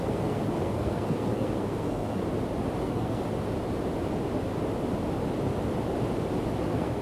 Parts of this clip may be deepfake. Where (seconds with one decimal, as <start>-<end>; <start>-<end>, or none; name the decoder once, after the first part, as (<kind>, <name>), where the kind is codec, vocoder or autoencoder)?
0.0-2.2 (codec, SNAC); 2.8-3.2; 6.6-7.0

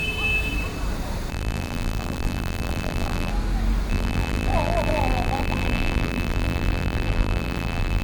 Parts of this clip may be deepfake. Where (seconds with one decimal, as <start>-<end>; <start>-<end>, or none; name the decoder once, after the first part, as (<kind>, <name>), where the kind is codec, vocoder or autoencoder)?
1.3-3.3 (vocoder, BigVGAN v2); 3.9-8.0

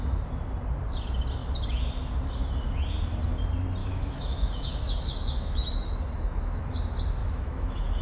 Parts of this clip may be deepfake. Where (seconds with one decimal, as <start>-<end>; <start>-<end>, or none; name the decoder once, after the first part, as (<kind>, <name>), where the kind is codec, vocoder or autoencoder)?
3.8-6.6 (autoencoder, DAC-VAE); 7.2-8.0

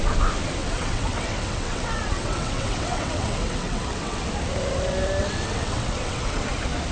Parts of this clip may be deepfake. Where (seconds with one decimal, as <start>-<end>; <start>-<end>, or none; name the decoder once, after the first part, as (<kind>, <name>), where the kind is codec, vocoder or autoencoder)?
0.6-4.2 (vocoder, WaveNeXt); 5.2-6.5

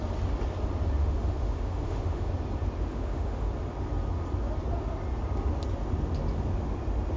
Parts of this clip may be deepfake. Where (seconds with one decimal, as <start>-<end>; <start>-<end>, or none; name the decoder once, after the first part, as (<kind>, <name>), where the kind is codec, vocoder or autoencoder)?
1.0-2.3 (autoencoder, DAC-VAE); 2.9-3.5